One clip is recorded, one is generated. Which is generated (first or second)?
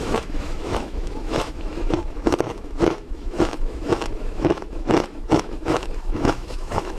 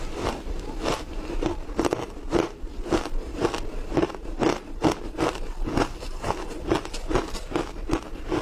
first